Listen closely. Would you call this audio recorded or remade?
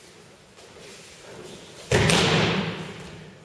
recorded